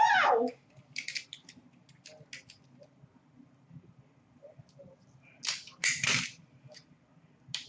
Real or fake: real